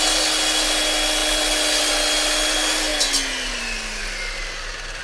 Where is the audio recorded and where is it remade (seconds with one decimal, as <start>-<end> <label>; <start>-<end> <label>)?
0.0-5.0 recorded